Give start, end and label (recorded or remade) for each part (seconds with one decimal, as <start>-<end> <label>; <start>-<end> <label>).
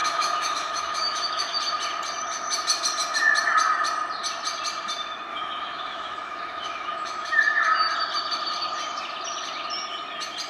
0.0-1.6 remade; 1.6-5.3 recorded; 5.3-7.4 remade; 7.4-10.5 recorded